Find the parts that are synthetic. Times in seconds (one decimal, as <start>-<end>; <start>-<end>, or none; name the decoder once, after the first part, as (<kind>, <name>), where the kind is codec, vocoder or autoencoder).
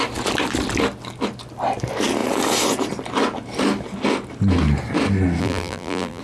5.4-6.2 (vocoder, BigVGAN v2)